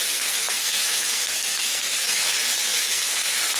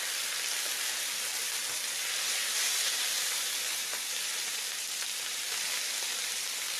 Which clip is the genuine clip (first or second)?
second